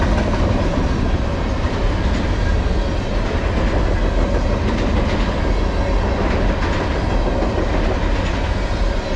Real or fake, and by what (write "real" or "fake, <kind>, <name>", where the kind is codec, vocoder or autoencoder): real